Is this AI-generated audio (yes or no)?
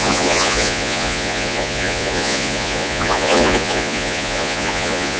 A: yes